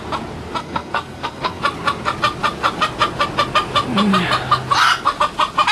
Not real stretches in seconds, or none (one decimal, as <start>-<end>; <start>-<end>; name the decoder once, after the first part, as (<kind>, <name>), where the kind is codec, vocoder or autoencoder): 0.6-1.6 (codec, SNAC)